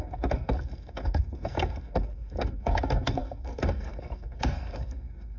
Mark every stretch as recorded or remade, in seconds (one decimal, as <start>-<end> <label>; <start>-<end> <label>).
0.0-5.4 remade